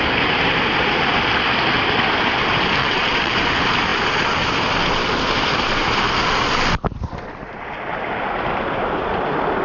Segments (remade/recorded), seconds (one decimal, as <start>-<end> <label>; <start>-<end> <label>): 0.0-2.8 recorded; 2.8-3.3 remade; 3.3-9.6 recorded